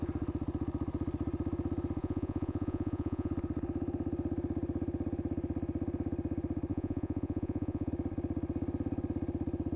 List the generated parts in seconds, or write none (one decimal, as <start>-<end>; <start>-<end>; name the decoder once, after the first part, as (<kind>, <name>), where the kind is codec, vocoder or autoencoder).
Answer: 2.0-3.3 (vocoder, Vocos); 6.7-7.9